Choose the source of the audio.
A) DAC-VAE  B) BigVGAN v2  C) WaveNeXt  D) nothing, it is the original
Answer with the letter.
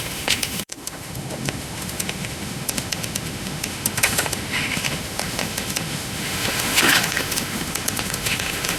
A